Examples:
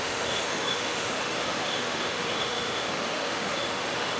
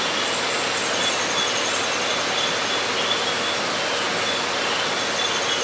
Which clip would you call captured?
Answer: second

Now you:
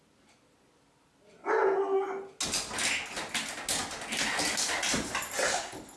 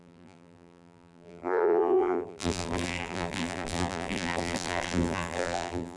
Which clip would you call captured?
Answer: first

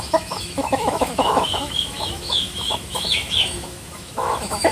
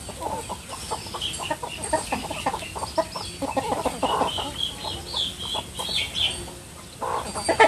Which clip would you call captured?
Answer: second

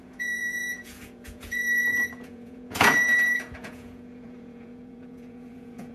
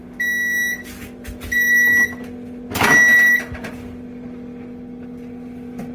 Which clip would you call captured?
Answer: second